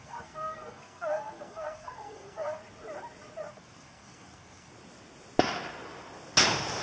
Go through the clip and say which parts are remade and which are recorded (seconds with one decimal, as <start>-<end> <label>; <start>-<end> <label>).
0.0-2.6 remade; 2.6-3.5 recorded; 3.5-4.7 remade; 4.7-6.8 recorded